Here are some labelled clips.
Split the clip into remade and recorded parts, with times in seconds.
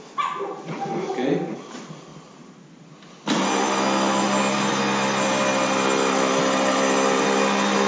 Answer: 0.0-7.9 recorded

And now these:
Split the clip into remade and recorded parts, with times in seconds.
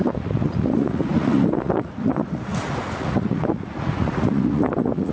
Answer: 0.0-5.1 remade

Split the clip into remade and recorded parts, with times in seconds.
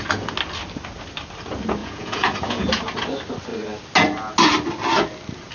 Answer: 0.0-1.8 recorded; 1.8-2.8 remade; 2.8-5.5 recorded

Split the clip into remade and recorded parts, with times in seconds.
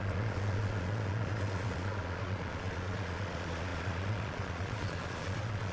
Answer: 0.0-5.7 remade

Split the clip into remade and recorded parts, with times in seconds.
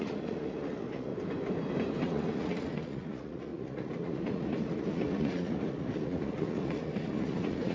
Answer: 0.0-1.1 remade; 1.1-2.0 recorded; 2.0-7.7 remade